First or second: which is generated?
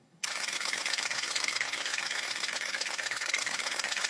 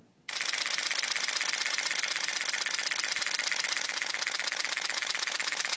first